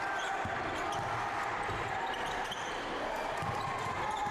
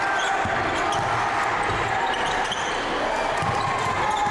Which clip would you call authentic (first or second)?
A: second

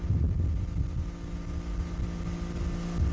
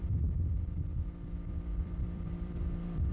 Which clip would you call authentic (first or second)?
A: first